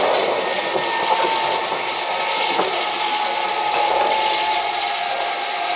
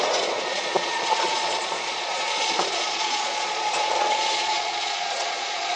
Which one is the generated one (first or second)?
second